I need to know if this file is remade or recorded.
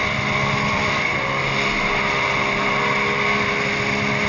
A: recorded